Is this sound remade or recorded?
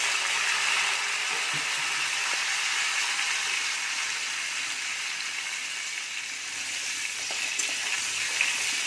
recorded